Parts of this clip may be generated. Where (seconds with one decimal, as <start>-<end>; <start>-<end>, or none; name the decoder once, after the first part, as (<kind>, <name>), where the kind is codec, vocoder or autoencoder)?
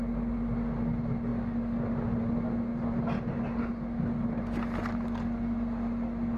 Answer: none